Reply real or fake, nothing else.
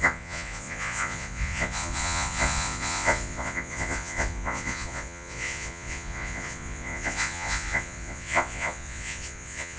fake